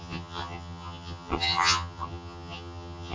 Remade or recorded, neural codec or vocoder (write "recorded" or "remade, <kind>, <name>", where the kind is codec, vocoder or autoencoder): remade, vocoder, HiFi-GAN